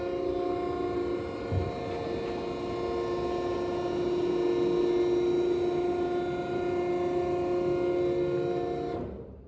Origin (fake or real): real